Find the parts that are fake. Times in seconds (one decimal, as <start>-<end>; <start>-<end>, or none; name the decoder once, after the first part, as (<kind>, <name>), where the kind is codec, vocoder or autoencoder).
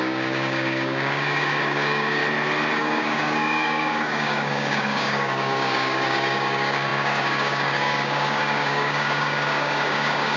0.0-2.2 (codec, DAC); 2.8-10.4